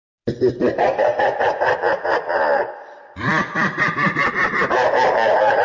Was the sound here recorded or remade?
recorded